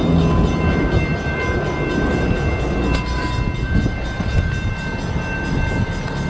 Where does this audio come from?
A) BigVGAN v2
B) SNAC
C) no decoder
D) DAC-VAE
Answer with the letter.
C